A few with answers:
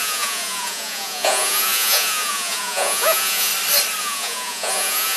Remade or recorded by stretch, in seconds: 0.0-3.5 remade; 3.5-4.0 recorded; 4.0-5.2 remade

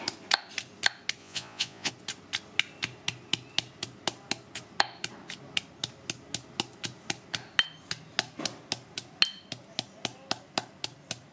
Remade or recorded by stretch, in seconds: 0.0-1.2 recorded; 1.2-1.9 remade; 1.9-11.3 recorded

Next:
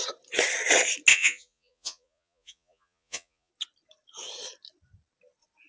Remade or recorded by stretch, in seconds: 0.0-1.1 recorded; 1.1-3.5 remade; 3.5-5.7 recorded

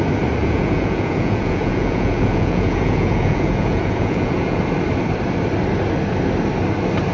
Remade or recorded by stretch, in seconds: 0.0-0.4 recorded; 0.4-4.6 remade; 4.6-7.1 recorded

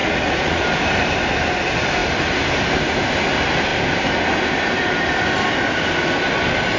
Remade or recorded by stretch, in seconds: 0.0-0.6 remade; 0.6-6.8 recorded

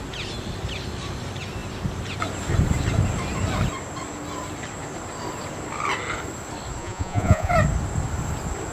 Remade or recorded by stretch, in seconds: 0.0-6.8 recorded; 6.8-7.5 remade; 7.5-8.7 recorded

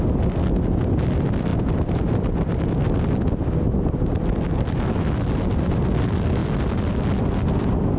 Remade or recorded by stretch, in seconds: 0.0-8.0 recorded